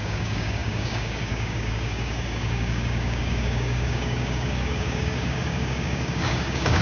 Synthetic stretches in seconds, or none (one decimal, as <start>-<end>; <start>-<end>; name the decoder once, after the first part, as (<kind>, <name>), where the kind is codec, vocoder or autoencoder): 0.0-6.8 (codec, DAC)